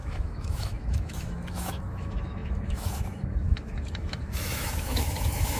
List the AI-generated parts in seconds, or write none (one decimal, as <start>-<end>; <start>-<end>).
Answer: 0.0-5.6